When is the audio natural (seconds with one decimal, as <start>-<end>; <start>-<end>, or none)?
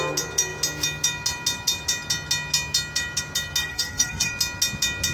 0.0-3.6; 4.3-5.1